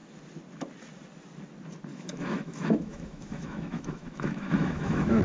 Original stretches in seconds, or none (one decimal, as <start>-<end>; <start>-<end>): 0.0-1.9